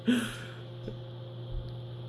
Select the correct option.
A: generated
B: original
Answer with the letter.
B